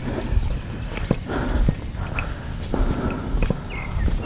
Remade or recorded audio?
recorded